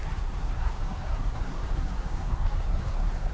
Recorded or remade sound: remade